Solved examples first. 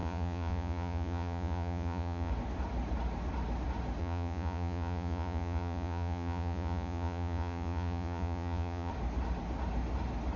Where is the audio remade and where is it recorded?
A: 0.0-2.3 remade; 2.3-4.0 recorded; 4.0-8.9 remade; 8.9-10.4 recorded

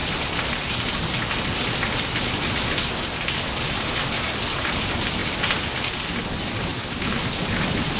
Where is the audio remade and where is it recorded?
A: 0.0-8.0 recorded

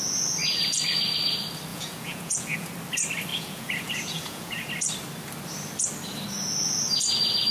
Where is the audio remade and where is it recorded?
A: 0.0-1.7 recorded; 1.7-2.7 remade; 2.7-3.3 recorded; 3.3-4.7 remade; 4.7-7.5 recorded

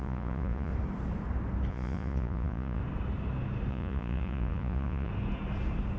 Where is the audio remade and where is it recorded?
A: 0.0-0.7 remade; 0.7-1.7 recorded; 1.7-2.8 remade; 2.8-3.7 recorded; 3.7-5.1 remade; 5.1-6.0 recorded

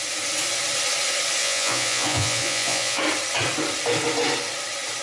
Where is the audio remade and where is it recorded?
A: 0.0-1.4 recorded; 1.4-3.0 remade; 3.0-5.0 recorded

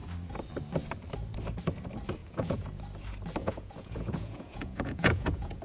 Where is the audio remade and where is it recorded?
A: 0.0-2.2 recorded; 2.2-2.8 remade; 2.8-3.4 recorded; 3.4-5.6 remade

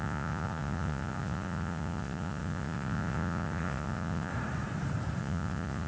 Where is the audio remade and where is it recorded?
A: 0.0-4.3 remade; 4.3-5.2 recorded; 5.2-5.9 remade